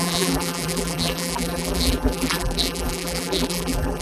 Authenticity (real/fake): fake